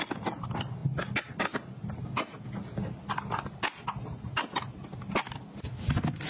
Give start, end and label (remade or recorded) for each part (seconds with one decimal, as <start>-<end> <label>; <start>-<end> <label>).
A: 0.0-6.3 recorded